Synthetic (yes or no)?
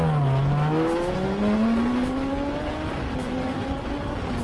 no